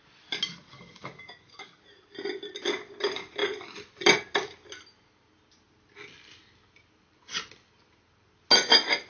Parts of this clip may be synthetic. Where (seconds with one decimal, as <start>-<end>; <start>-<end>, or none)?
0.5-1.8